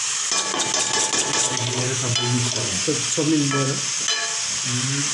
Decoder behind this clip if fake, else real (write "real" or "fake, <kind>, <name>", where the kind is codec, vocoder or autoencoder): real